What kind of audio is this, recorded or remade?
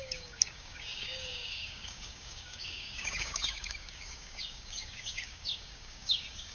remade